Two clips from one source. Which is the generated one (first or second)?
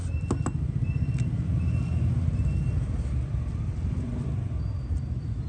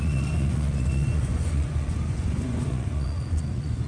second